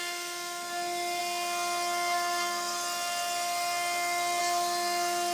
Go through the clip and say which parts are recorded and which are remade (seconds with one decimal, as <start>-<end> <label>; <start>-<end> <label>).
0.0-5.3 recorded